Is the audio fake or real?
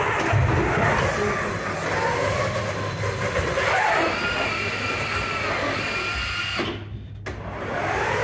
real